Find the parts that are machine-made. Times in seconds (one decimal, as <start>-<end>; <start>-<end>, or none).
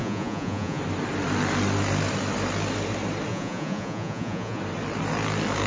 0.0-0.8; 3.3-4.6